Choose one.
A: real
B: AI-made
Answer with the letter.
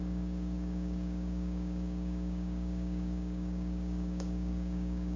B